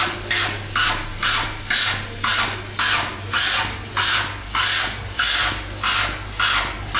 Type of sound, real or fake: real